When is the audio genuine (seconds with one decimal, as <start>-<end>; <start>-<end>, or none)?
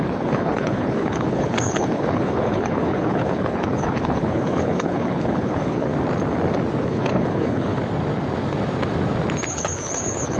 5.9-6.8; 7.8-9.5